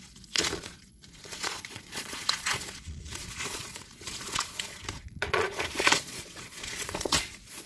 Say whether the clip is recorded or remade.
remade